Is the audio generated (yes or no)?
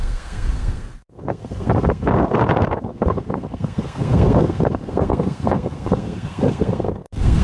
yes